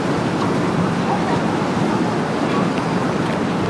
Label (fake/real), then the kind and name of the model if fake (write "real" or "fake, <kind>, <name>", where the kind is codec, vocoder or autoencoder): real